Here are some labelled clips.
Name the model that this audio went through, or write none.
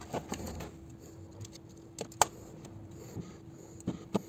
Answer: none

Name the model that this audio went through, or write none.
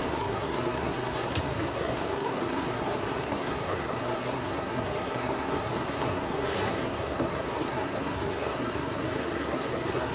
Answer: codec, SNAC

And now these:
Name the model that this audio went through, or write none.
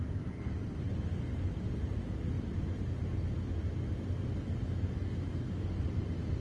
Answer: none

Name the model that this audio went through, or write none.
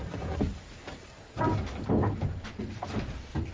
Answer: none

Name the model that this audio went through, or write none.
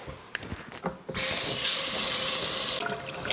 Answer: none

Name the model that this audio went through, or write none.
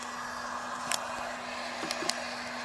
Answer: none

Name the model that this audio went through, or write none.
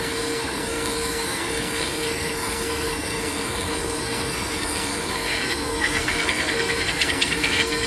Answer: codec, SNAC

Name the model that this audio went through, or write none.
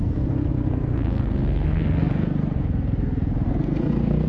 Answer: codec, SNAC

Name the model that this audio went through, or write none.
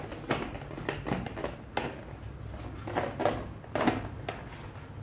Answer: none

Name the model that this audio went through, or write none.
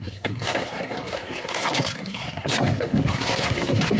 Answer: codec, SNAC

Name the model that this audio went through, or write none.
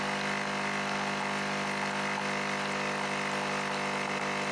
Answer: none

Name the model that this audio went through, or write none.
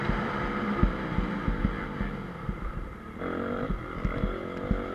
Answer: none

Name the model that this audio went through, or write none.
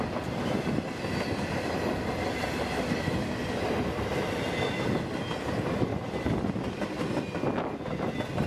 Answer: none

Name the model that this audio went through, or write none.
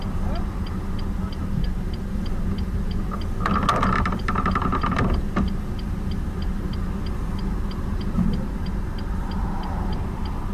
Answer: none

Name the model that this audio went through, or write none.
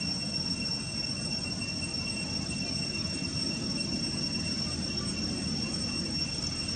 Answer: none